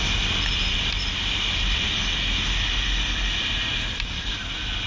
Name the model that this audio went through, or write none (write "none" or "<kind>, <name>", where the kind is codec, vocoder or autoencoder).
none